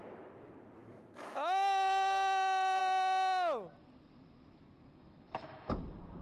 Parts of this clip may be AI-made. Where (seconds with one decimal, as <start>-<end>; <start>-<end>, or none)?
0.8-2.8; 5.0-5.7